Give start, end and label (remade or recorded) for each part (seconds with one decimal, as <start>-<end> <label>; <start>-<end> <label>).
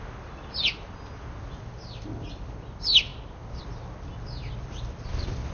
0.0-5.5 recorded